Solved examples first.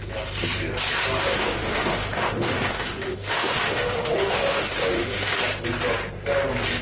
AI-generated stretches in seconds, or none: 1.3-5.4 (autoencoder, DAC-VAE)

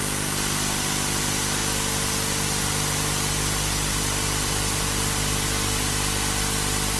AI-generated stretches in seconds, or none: none

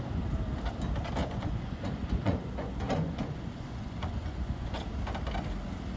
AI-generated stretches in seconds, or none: 1.2-4.8 (vocoder, Vocos)

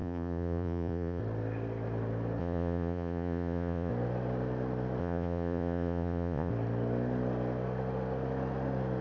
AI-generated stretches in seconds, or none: 0.0-1.2 (vocoder, Vocos); 2.4-3.9; 5.0-6.5

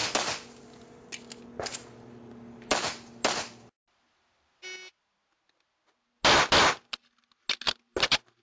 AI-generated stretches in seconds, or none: none

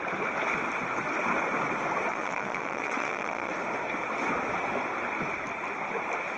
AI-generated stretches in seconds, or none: 2.1-3.5 (vocoder, Vocos)

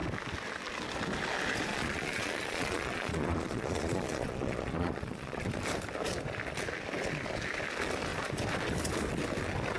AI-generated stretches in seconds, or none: 1.7-5.5 (vocoder, Vocos)